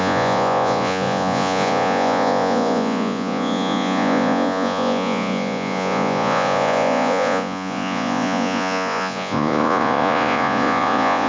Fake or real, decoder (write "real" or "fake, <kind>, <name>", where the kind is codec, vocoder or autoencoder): fake, vocoder, Vocos